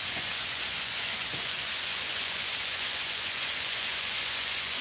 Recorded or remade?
remade